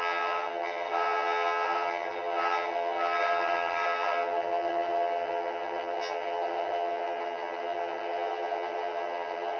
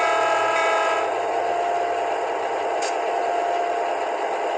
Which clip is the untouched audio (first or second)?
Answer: second